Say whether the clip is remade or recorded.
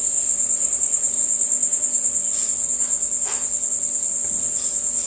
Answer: recorded